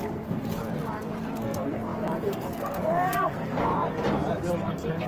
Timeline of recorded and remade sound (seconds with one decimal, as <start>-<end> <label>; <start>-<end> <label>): 0.0-0.6 remade; 0.6-1.4 recorded; 1.4-3.7 remade; 3.7-4.5 recorded; 4.5-5.1 remade